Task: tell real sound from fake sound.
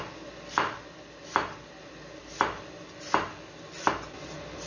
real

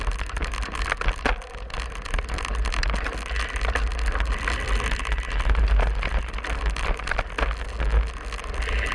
real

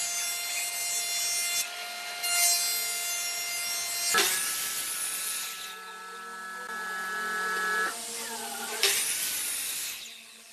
real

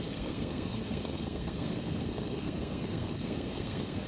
fake